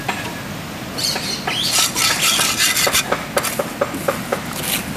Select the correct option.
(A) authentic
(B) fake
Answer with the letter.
A